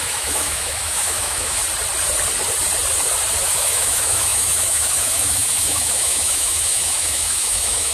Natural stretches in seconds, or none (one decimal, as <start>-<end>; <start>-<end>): 1.6-3.4